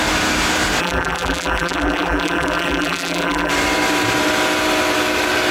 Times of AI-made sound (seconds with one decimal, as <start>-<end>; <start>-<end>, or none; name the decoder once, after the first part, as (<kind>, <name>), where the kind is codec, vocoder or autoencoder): 0.8-3.5 (vocoder, BigVGAN v2)